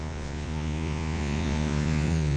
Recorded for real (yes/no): no